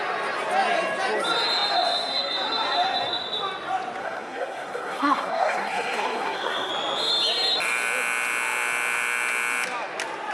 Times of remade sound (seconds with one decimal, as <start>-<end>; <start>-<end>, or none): 4.0-6.7